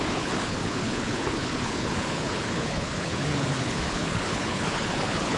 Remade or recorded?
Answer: remade